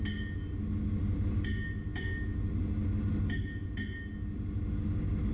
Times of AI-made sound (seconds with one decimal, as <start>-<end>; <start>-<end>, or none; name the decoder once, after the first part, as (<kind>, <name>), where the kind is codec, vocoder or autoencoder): none